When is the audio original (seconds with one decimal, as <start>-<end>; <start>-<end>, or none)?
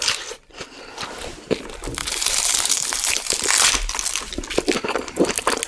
0.0-2.0; 3.3-5.7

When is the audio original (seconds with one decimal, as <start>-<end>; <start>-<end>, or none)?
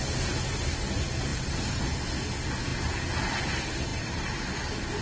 0.0-1.3; 1.8-3.9; 4.4-5.0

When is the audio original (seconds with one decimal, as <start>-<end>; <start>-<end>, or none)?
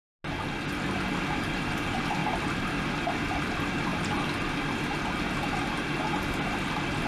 0.0-2.2; 2.8-7.1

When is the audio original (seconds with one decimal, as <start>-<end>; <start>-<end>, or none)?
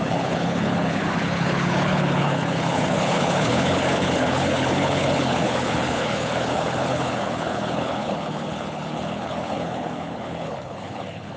none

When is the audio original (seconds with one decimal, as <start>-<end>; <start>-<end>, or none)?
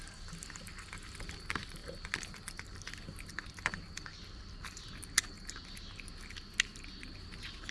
0.0-7.7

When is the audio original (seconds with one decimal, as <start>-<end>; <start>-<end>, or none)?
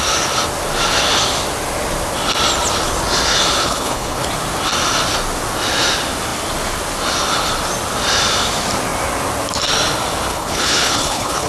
0.0-3.6; 4.3-10.3